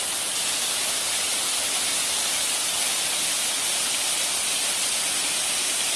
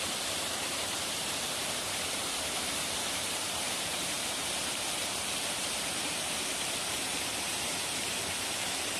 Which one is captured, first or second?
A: first